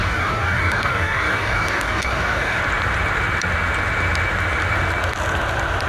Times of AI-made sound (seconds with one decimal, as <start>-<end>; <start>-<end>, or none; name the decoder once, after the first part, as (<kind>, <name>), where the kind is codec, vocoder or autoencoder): 0.0-2.6 (codec, DAC)